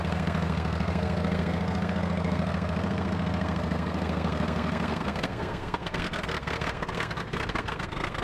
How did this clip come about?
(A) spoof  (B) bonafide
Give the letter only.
A